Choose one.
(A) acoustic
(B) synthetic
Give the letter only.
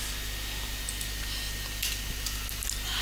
A